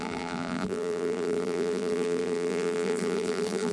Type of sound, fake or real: fake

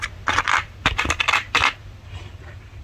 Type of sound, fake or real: real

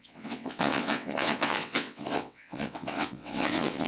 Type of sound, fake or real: fake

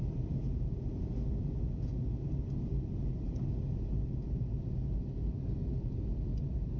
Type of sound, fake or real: real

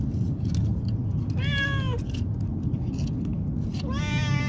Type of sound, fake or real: real